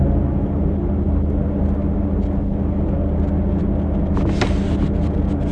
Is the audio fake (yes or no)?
no